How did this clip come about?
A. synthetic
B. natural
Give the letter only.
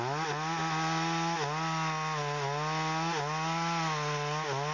B